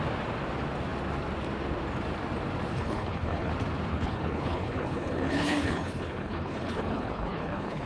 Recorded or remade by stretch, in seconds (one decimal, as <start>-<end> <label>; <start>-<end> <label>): 0.0-2.7 recorded; 2.7-3.5 remade; 3.5-3.9 recorded; 3.9-7.9 remade